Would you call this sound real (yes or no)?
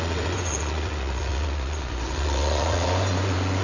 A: no